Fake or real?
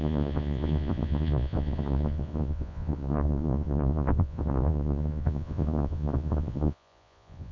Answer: fake